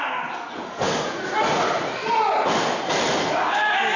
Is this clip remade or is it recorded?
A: recorded